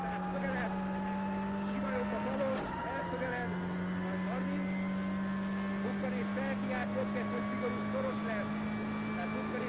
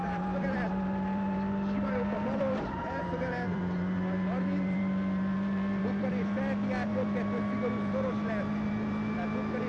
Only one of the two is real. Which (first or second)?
first